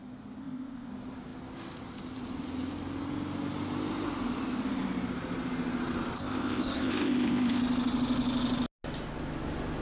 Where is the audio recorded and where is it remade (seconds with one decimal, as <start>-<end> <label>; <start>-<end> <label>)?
0.0-0.4 recorded; 0.4-0.9 remade; 0.9-6.2 recorded; 6.2-7.6 remade; 7.6-9.8 recorded